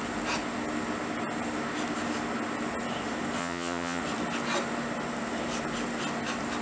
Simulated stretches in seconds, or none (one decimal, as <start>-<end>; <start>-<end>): 3.4-4.0